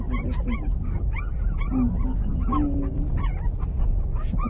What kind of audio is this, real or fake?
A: real